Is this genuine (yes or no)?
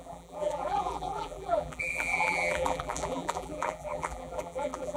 no